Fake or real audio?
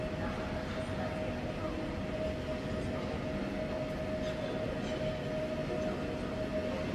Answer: real